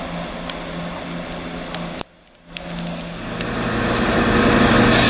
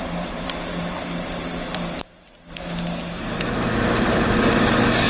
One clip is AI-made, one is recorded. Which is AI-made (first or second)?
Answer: second